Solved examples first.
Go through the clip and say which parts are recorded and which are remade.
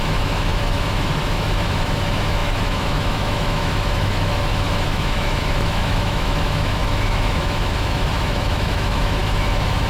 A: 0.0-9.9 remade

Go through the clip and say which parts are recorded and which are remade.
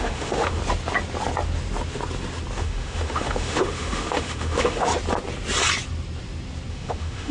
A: 0.0-0.6 remade; 0.6-2.6 recorded; 2.6-4.9 remade; 4.9-6.7 recorded; 6.7-7.3 remade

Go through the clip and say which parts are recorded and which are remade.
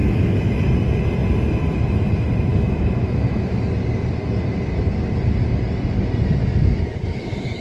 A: 0.0-0.7 remade; 0.7-2.5 recorded; 2.5-3.7 remade; 3.7-6.4 recorded; 6.4-7.6 remade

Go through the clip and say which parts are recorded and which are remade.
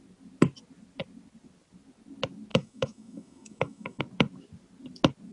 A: 0.0-2.5 recorded; 2.5-4.0 remade; 4.0-5.3 recorded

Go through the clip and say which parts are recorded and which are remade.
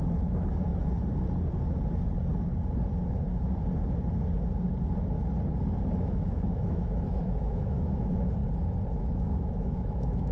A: 0.0-0.7 remade; 0.7-6.0 recorded; 6.0-8.4 remade; 8.4-9.0 recorded; 9.0-10.3 remade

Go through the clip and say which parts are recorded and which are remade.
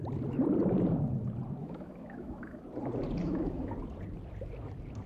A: 0.0-1.6 recorded; 1.6-2.6 remade; 2.6-3.2 recorded; 3.2-3.7 remade; 3.7-5.1 recorded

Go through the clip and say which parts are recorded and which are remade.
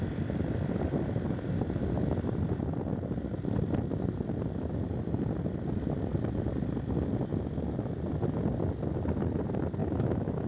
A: 0.0-9.8 recorded; 9.8-10.5 remade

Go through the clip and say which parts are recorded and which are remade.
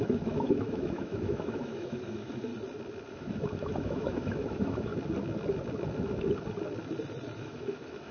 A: 0.0-2.5 remade; 2.5-3.1 recorded; 3.1-4.9 remade; 4.9-7.4 recorded; 7.4-8.1 remade